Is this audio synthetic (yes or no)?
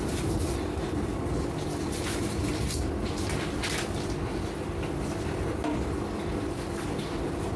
no